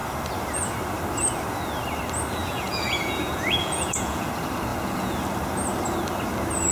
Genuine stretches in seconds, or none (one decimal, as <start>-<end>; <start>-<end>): 0.0-2.4; 4.3-4.7; 5.2-6.7